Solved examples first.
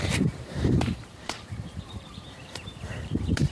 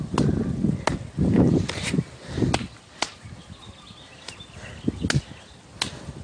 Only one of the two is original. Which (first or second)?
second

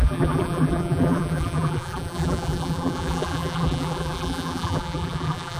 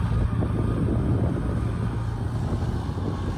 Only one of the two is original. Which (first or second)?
second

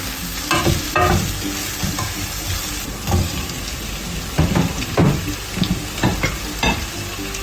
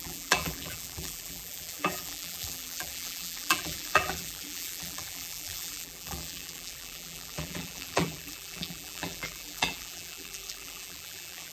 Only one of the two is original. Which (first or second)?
first